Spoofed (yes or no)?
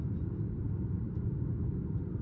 yes